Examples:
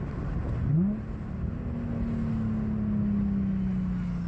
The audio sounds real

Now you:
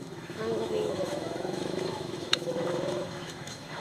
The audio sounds fake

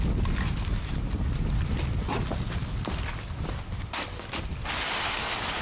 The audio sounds real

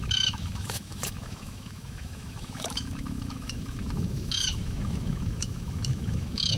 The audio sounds fake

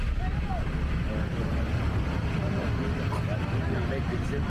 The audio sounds real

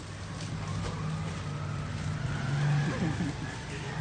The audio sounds real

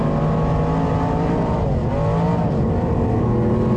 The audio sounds real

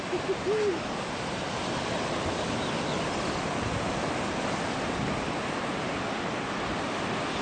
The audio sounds real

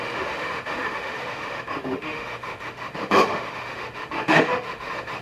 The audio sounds fake